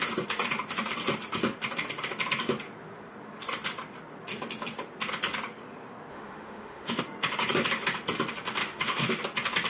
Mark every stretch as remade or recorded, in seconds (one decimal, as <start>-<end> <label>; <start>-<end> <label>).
0.0-6.1 recorded; 6.1-7.0 remade; 7.0-8.6 recorded; 8.6-9.2 remade; 9.2-9.7 recorded